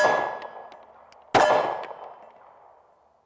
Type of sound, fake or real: real